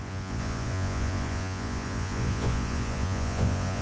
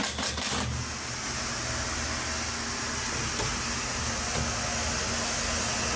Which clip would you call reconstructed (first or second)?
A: first